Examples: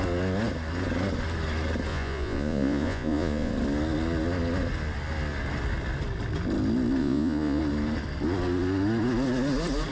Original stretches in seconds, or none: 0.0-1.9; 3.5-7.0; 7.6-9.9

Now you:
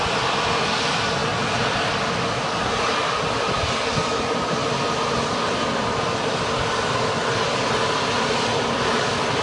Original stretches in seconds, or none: 0.0-9.4